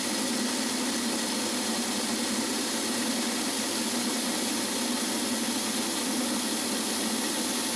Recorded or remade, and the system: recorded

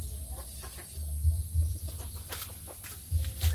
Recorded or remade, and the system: recorded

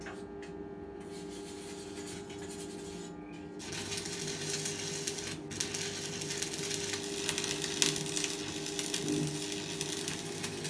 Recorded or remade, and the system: recorded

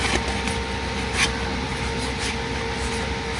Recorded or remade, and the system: recorded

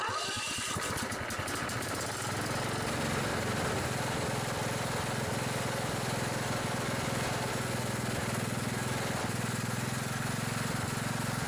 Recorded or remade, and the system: recorded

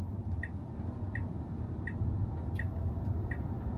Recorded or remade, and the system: recorded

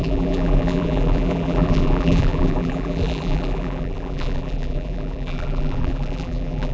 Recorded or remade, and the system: remade, vocoder, BigVGAN v2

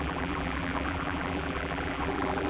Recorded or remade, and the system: remade, vocoder, BigVGAN v2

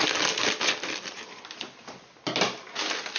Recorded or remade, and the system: recorded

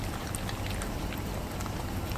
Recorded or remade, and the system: recorded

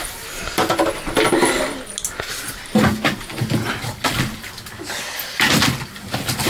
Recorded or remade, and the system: recorded